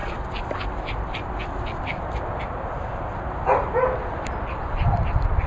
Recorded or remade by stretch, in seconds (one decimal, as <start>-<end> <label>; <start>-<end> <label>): 0.0-5.5 recorded